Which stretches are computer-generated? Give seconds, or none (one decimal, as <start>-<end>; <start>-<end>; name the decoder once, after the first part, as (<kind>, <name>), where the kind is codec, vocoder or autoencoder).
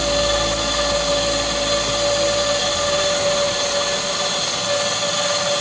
none